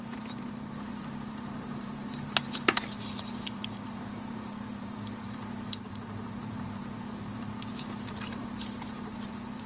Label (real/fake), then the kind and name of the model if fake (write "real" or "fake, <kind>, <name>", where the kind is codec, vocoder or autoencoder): fake, vocoder, BigVGAN v2